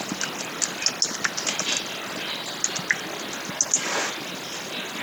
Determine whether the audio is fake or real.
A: real